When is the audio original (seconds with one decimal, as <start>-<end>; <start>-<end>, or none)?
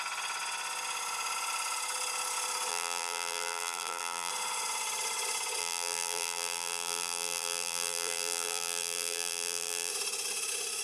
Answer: 0.0-2.7; 4.3-5.6; 9.9-10.8